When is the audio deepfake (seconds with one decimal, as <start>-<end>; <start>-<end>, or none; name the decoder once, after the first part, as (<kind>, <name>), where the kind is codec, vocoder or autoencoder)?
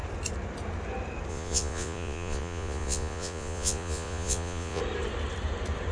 1.3-4.8 (vocoder, Vocos)